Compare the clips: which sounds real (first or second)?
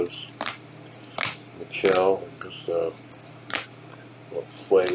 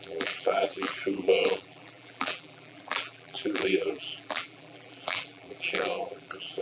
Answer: first